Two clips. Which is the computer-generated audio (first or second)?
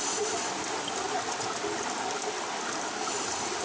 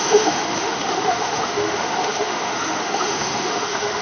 second